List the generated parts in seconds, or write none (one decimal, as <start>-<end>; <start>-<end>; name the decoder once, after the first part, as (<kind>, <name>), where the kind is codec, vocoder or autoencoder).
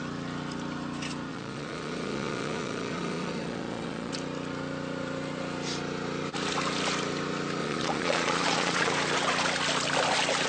1.3-4.1 (vocoder, Vocos); 7.6-8.9